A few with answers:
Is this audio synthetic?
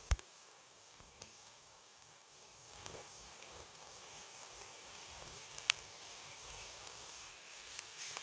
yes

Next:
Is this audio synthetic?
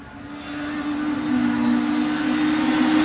no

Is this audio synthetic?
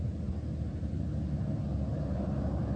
no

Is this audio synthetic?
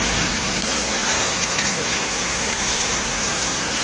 yes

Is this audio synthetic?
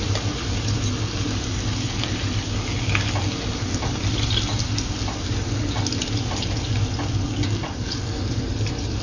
no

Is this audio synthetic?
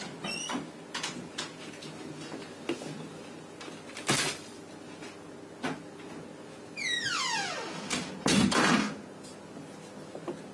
no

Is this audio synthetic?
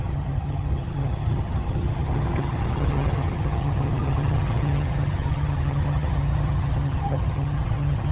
yes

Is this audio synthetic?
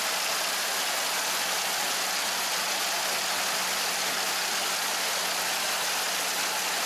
no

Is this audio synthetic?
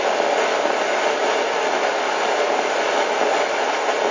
no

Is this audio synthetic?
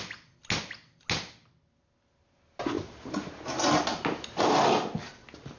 no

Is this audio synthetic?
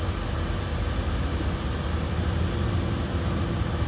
no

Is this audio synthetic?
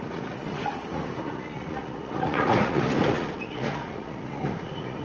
yes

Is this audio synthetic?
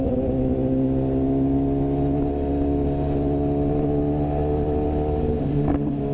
no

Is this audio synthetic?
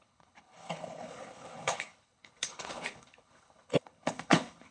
yes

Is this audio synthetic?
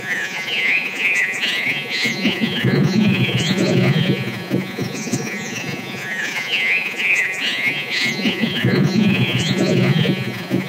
yes